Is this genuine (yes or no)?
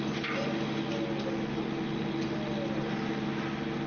yes